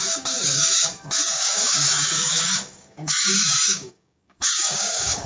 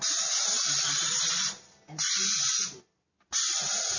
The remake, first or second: first